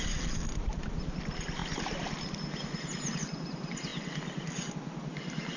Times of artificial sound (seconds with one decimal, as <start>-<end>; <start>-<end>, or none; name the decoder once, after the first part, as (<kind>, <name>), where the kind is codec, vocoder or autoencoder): none